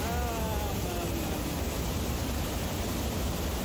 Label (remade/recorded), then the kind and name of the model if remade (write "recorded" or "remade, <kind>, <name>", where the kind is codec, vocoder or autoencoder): recorded